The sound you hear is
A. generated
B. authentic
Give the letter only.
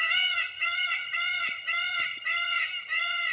A